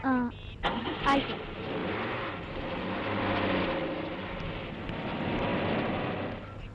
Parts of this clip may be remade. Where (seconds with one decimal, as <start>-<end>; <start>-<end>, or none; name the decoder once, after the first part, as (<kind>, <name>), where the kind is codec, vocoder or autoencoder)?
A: none